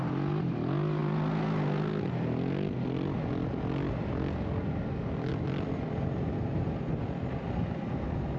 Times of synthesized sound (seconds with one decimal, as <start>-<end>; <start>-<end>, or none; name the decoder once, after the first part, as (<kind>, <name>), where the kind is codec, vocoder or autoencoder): none